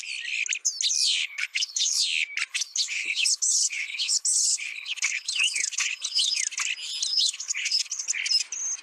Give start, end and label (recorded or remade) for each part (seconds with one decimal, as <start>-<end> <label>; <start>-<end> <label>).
0.0-1.1 recorded; 1.1-2.0 remade; 2.0-2.5 recorded; 2.5-6.4 remade; 6.4-7.1 recorded; 7.1-8.0 remade; 8.0-8.8 recorded